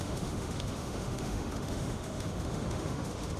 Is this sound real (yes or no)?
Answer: no